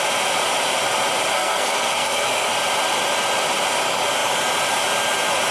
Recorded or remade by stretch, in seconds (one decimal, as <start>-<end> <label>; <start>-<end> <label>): 0.0-1.3 recorded; 1.3-2.5 remade; 2.5-5.5 recorded